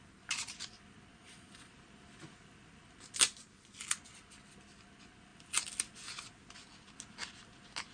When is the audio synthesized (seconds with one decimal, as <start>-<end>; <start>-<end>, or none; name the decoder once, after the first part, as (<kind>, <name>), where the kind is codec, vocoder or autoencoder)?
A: 1.1-1.7 (vocoder, Vocos)